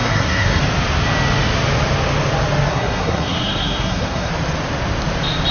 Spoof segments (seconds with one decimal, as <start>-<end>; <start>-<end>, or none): 0.0-0.6; 2.7-4.3